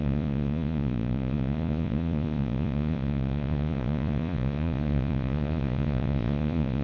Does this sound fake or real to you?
fake